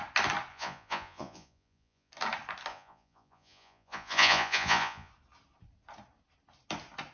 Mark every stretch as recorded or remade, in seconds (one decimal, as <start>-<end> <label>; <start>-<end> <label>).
0.0-0.5 recorded; 0.5-2.1 remade; 2.1-2.7 recorded; 2.7-5.1 remade; 5.1-7.1 recorded